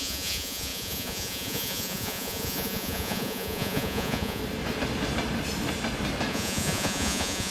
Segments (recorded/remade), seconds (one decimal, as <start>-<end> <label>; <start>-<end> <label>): 0.0-4.4 remade; 4.4-6.3 recorded; 6.3-7.5 remade